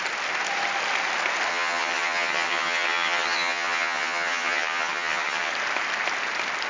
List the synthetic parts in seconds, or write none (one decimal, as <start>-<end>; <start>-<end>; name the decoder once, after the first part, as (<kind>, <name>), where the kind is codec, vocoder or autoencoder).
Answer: 1.5-5.5 (vocoder, HiFi-GAN)